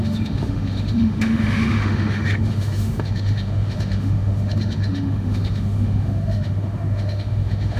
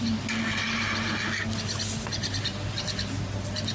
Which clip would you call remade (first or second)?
first